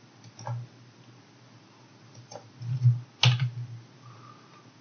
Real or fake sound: real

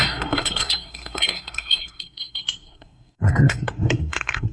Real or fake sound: fake